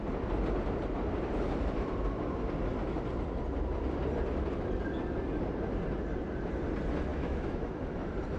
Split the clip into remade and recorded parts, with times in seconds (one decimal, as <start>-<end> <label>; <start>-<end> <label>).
0.0-7.1 recorded; 7.1-7.7 remade; 7.7-8.4 recorded